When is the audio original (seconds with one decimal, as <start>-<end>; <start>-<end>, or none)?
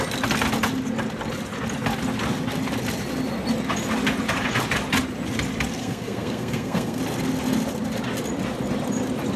0.0-5.8; 7.0-9.4